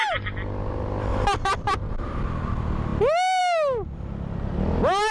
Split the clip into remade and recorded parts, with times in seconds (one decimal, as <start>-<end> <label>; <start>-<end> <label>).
0.0-1.1 recorded; 1.1-2.2 remade; 2.2-5.1 recorded